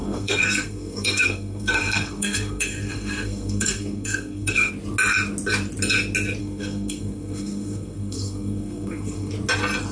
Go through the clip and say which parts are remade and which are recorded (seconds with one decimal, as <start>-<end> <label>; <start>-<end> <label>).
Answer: 0.0-4.7 remade; 4.7-6.4 recorded; 6.4-9.3 remade; 9.3-9.9 recorded